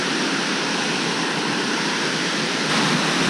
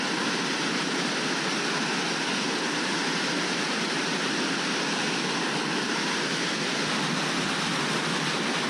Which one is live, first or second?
second